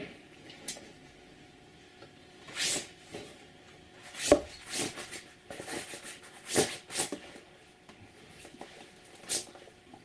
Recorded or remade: recorded